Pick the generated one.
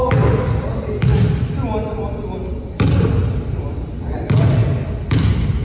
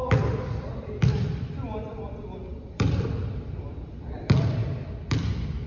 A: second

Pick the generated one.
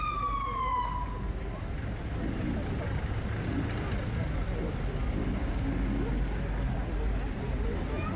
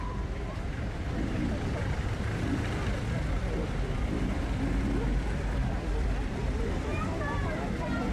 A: second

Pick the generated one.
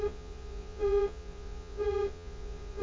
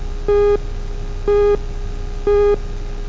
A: first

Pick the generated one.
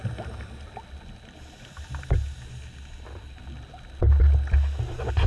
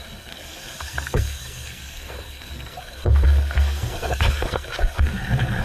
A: second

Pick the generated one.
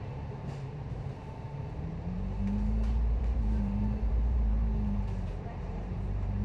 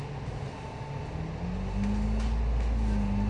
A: first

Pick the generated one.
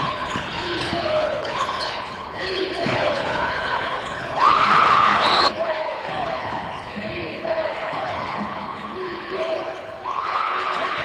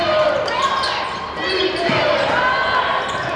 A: first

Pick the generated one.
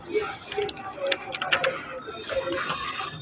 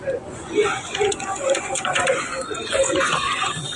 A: second